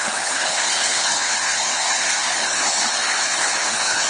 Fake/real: fake